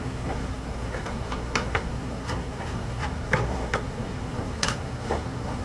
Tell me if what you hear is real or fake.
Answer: fake